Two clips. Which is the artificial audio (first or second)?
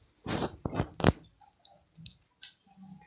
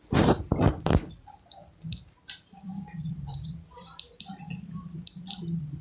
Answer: second